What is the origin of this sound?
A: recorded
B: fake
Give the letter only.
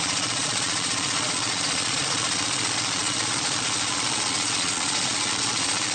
B